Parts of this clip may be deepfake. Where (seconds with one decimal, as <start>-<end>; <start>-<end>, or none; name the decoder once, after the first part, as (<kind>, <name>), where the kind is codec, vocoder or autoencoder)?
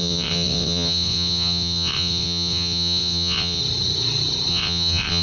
0.0-3.6 (vocoder, WaveNeXt); 4.5-5.2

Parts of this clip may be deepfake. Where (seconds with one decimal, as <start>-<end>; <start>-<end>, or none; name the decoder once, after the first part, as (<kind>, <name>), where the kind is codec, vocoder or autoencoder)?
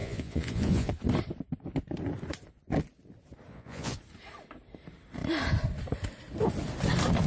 0.0-0.9 (vocoder, Vocos); 3.5-4.0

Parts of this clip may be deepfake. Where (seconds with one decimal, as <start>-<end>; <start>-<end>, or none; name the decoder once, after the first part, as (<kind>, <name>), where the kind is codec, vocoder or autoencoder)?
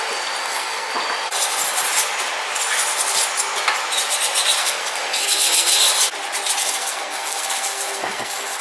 0.4-0.9 (codec, SNAC); 4.6-5.8; 6.6-8.6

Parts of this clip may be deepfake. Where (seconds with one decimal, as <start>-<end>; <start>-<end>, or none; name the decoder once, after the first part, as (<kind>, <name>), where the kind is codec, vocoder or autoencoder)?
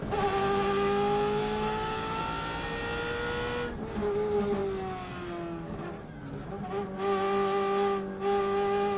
1.4-2.2 (codec, DAC)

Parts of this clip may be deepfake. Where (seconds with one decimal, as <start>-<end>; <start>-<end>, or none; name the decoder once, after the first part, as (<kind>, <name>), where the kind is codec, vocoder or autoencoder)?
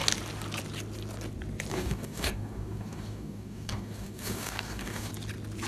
1.7-5.1 (codec, DAC)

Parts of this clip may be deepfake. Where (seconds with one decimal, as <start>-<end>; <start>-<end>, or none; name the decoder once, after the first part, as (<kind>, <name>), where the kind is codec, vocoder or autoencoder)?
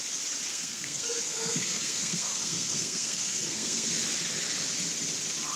0.5-3.9 (codec, SNAC)